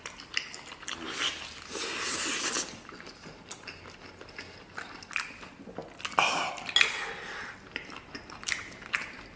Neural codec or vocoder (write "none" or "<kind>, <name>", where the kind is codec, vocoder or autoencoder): none